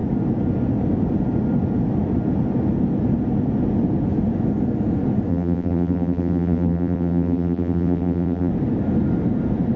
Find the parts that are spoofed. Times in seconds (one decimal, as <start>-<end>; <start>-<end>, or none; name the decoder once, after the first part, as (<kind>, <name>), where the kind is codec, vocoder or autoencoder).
5.3-8.5 (vocoder, BigVGAN v2)